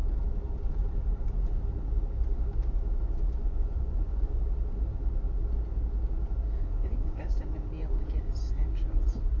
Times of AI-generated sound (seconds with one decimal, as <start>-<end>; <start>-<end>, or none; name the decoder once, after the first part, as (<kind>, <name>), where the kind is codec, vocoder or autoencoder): 3.5-4.3 (vocoder, Vocos); 6.6-7.3